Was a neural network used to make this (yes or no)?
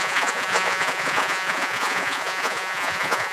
yes